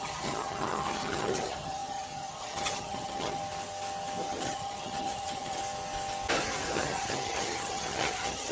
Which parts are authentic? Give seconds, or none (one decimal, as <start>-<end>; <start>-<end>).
3.4-4.3; 5.6-6.7